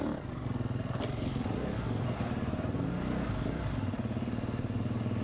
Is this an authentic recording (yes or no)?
yes